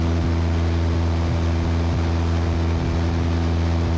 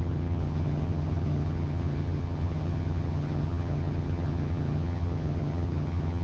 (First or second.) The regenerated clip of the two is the second